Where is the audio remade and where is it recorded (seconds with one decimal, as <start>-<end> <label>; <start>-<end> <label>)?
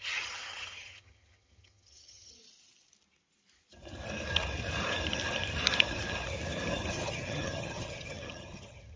0.0-2.4 remade; 2.4-6.9 recorded; 6.9-9.0 remade